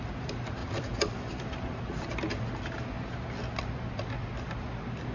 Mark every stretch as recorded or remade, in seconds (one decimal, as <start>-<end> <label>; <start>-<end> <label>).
0.0-0.6 recorded; 0.6-2.2 remade; 2.2-5.1 recorded